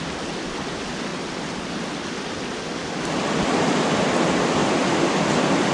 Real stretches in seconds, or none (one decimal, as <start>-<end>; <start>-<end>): 0.0-1.1; 1.7-5.7